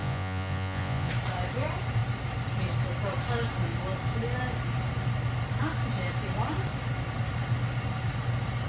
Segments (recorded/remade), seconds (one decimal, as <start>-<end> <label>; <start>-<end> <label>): 0.0-1.1 remade; 1.1-8.7 recorded